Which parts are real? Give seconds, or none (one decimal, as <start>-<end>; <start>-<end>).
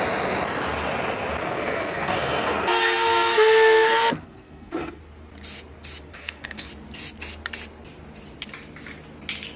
0.0-1.4; 5.0-6.1; 6.7-9.6